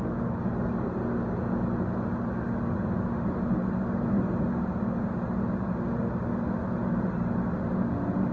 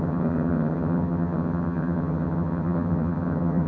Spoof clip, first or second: second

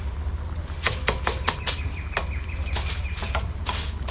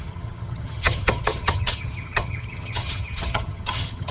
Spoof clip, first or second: second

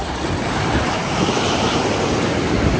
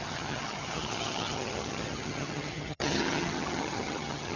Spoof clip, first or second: second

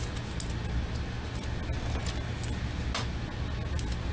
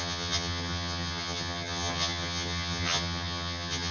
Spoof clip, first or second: second